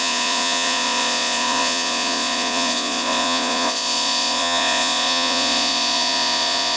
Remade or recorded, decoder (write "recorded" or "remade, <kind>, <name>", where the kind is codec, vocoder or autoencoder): remade, vocoder, Vocos